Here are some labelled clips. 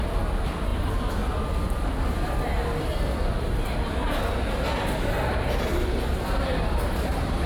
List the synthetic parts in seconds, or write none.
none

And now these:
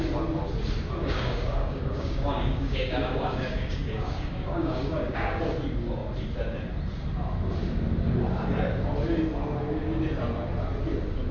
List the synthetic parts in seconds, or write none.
1.0-5.4 (codec, DAC)

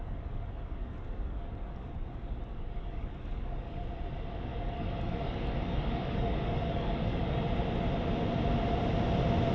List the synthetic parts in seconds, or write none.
0.0-3.8 (codec, DAC); 4.5-7.4

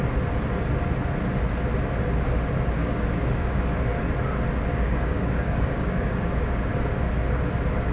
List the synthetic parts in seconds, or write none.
2.8-3.6 (codec, DAC); 4.7-6.6